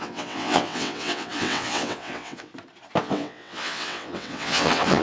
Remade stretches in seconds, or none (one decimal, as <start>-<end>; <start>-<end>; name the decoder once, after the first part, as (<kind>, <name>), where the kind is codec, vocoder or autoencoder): 0.0-2.5 (vocoder, WaveNeXt); 3.0-5.0